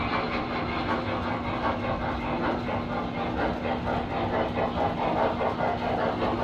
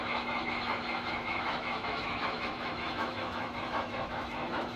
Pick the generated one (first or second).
second